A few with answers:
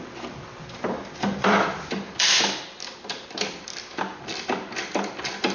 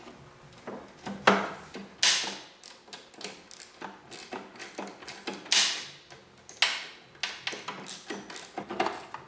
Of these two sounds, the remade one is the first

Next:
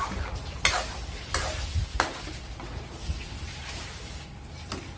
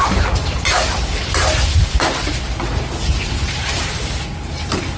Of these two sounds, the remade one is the second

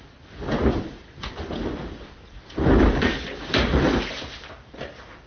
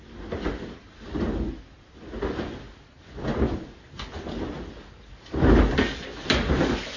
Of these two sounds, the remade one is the first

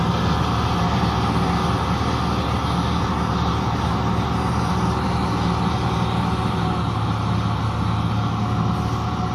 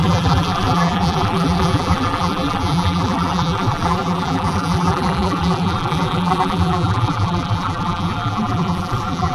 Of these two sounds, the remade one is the second